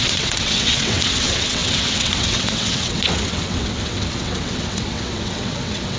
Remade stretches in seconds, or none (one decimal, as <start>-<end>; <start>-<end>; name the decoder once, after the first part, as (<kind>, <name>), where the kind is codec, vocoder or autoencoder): 0.0-6.0 (vocoder, WaveNeXt)